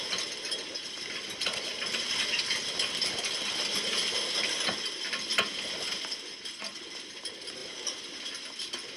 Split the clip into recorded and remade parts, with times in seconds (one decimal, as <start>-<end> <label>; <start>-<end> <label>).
0.0-9.0 recorded